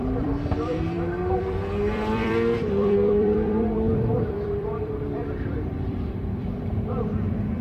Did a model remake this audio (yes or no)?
yes